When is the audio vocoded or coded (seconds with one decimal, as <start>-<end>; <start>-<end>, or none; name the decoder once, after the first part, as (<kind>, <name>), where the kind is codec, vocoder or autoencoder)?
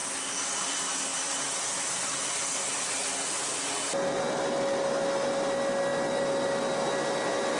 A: none